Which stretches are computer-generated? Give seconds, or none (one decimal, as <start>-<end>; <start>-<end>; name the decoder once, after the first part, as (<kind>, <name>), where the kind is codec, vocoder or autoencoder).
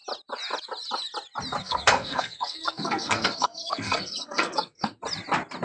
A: 1.6-5.0 (codec, SNAC)